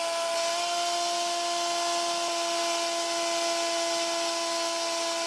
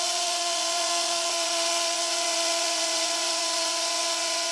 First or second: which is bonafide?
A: first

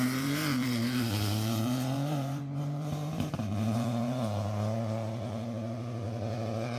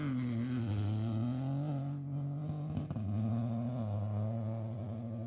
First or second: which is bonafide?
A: second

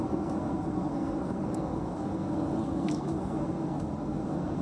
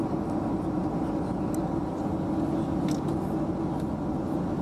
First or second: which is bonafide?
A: second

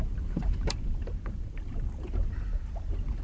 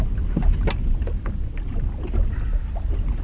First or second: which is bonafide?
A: second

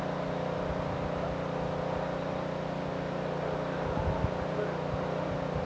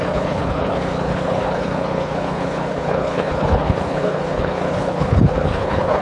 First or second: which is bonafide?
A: first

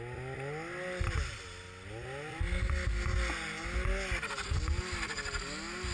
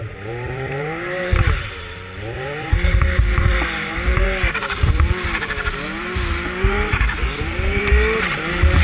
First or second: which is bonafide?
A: first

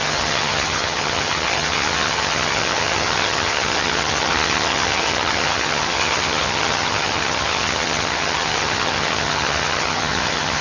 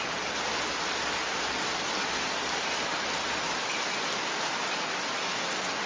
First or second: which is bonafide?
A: second